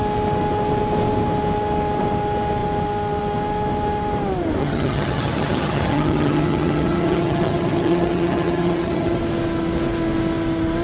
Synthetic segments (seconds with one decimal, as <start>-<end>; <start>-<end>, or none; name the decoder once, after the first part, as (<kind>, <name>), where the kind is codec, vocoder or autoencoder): 4.6-9.2 (vocoder, HiFi-GAN)